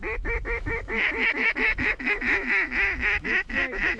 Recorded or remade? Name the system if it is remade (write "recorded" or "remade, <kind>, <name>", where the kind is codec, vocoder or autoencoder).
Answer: remade, autoencoder, DAC-VAE